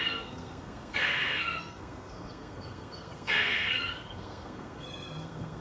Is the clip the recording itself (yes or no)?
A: no